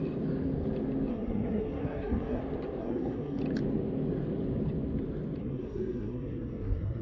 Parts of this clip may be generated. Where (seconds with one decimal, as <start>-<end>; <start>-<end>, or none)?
1.1-2.4; 2.8-3.4; 5.4-7.0